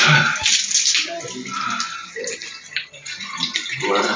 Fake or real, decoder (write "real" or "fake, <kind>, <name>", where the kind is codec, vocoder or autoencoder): real